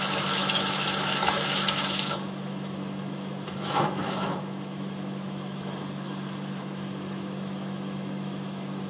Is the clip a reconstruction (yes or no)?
yes